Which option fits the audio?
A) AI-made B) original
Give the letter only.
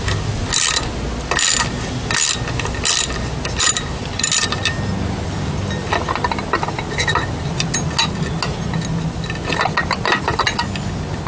B